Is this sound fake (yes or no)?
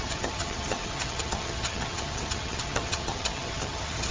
yes